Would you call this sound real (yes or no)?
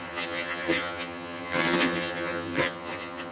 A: no